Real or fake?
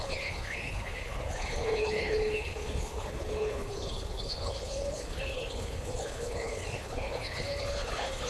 fake